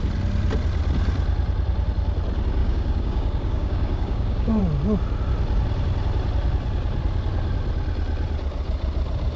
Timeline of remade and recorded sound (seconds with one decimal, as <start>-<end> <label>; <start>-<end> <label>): 0.0-2.6 recorded; 2.6-4.6 remade; 4.6-9.4 recorded